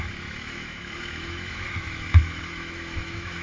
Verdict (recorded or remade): remade